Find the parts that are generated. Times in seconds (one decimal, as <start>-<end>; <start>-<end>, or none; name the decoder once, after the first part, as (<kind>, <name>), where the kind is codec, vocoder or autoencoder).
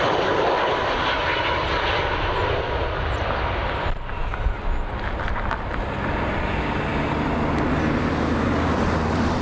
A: none